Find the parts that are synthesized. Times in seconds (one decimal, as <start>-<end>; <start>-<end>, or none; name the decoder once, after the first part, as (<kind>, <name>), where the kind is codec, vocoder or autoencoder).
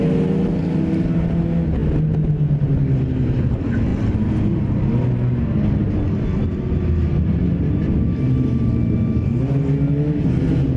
none